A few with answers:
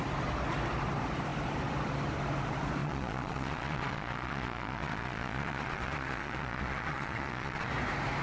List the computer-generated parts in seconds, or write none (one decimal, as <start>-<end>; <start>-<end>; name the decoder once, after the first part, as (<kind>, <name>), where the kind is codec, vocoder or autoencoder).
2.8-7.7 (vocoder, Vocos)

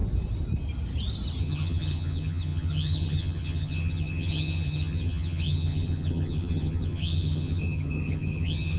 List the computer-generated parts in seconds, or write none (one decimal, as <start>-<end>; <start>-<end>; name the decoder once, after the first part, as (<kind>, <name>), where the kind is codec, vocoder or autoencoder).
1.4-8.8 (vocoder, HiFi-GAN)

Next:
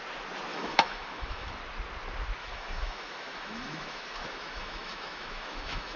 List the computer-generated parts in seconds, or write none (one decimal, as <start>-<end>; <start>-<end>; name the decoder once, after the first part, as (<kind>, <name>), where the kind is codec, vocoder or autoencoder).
0.5-1.5 (autoencoder, DAC-VAE); 2.4-6.0